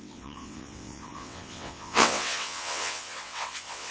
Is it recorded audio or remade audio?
remade